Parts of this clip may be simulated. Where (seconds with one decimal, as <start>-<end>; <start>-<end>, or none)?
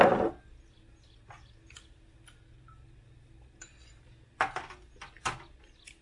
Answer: none